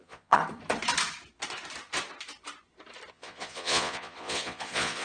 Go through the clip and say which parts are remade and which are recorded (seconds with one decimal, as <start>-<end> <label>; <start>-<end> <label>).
0.0-0.4 remade; 0.4-3.1 recorded; 3.1-5.0 remade